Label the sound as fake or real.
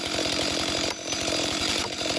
fake